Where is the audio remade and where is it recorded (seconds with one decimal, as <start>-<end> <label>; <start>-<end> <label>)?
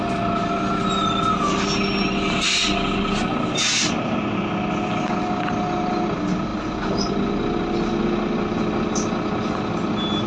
0.0-10.3 recorded